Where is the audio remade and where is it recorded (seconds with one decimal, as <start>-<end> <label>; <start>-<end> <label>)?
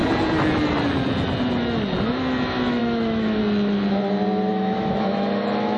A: 0.0-2.8 recorded; 2.8-3.4 remade; 3.4-4.5 recorded; 4.5-5.8 remade